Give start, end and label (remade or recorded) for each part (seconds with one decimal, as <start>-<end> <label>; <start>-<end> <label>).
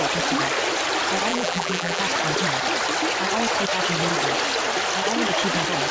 0.0-1.3 recorded; 1.3-2.0 remade; 2.0-5.9 recorded